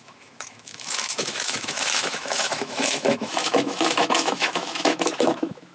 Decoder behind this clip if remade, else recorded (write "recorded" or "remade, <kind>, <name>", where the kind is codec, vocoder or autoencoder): remade, autoencoder, DAC-VAE